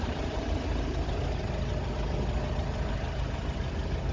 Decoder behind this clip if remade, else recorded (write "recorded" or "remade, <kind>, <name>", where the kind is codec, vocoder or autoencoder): recorded